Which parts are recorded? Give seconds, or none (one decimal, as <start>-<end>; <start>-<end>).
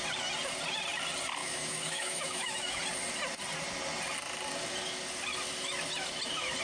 0.0-1.4; 2.8-6.6